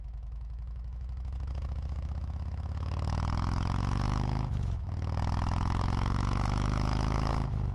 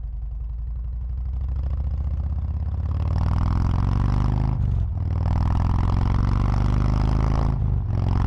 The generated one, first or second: first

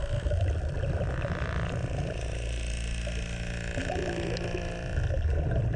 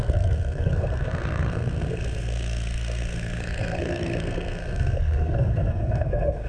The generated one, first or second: second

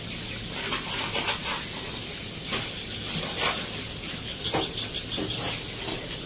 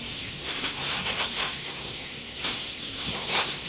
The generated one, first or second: second